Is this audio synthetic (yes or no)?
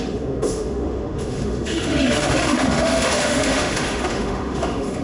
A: yes